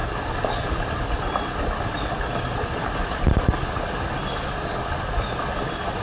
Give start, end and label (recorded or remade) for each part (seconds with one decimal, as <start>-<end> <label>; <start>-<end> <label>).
0.0-6.0 recorded